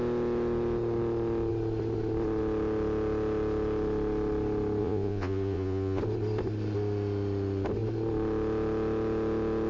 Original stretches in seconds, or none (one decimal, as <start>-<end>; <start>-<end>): 0.0-4.8; 6.0-9.7